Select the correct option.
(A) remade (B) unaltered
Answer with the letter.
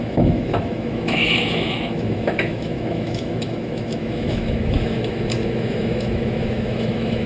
A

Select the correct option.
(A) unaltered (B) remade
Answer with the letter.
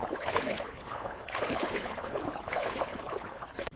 B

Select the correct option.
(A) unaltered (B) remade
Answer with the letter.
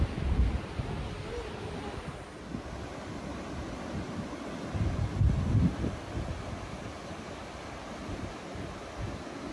B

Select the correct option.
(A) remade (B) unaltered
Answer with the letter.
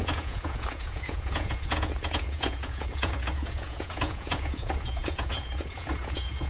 A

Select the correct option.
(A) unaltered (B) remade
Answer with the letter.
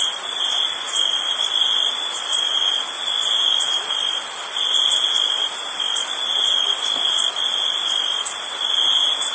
A